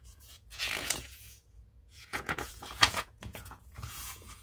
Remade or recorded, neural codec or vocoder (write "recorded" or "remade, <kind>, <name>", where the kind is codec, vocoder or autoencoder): remade, vocoder, Vocos